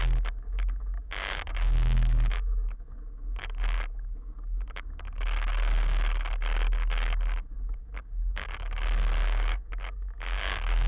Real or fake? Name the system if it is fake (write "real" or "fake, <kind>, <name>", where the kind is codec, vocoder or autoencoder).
fake, codec, DAC